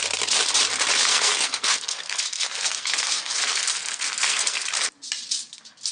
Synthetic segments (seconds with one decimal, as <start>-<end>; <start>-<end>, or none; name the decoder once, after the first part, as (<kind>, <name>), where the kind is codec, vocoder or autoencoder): 1.1-4.6 (codec, SNAC)